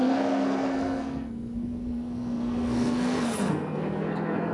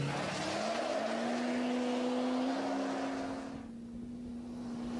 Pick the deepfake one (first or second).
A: first